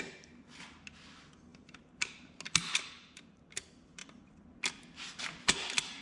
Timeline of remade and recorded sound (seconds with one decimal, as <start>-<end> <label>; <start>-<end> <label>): 0.0-1.5 recorded; 1.5-2.2 remade; 2.2-2.6 recorded; 2.6-3.4 remade; 3.4-6.0 recorded